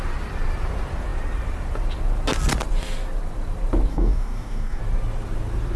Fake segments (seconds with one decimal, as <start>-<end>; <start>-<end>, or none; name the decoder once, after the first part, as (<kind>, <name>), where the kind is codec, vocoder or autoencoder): 3.9-4.8 (codec, DAC)